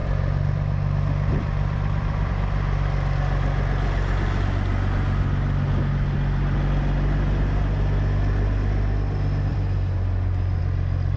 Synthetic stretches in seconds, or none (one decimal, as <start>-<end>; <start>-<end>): 0.0-2.3; 9.5-10.6